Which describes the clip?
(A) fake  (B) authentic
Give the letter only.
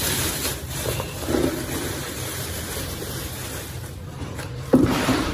A